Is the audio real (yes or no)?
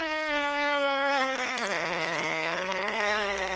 no